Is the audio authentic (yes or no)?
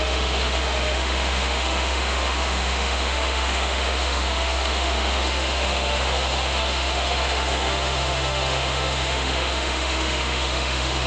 no